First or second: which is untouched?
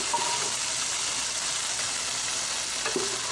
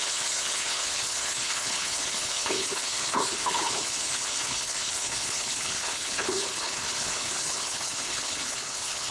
first